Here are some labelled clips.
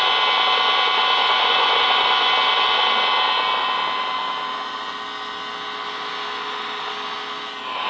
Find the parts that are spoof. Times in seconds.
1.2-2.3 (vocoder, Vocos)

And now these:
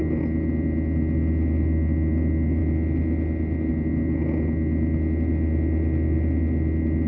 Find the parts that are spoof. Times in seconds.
none

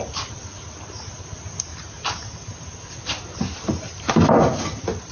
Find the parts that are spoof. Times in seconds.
none

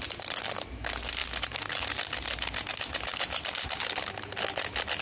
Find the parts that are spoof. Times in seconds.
1.2-1.8 (vocoder, BigVGAN v2)

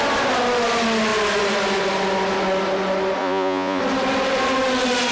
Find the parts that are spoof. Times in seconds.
3.2-3.8 (vocoder, Vocos)

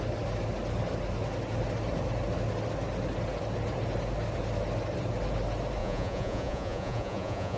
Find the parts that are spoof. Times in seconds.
5.8-7.6 (vocoder, Vocos)

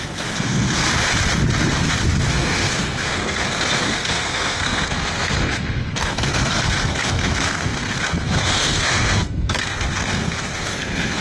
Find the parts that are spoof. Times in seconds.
0.0-0.9 (codec, SNAC); 2.3-11.2